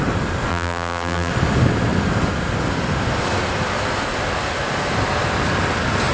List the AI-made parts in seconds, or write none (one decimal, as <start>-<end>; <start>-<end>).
0.5-1.3